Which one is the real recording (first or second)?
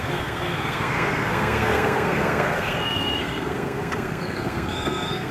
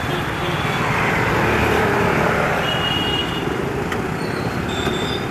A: second